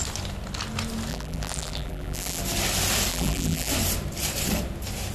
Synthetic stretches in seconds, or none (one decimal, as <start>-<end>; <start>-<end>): 1.1-2.4; 3.1-3.7